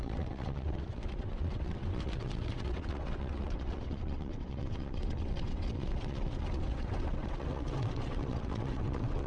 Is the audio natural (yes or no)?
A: no